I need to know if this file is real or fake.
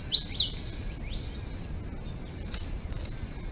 real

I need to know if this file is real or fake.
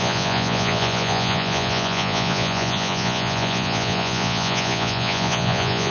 fake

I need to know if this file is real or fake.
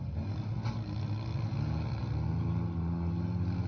real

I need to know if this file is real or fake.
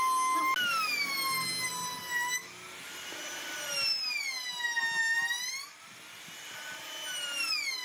real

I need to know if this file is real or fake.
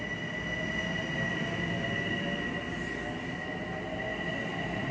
real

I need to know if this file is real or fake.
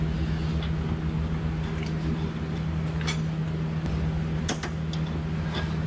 real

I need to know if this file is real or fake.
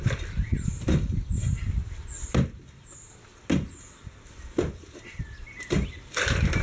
real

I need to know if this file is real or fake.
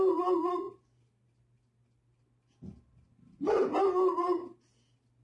real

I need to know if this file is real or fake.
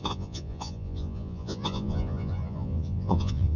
fake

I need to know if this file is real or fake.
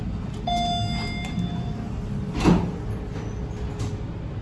real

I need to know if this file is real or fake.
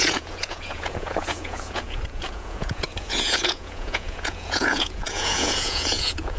fake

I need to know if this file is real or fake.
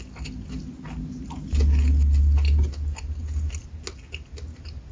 real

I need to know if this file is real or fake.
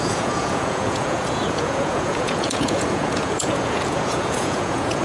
fake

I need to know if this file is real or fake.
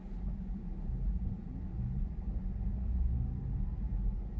real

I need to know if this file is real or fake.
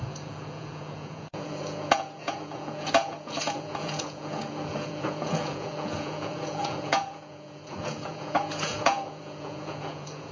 fake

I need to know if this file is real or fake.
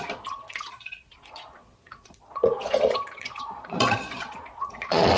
fake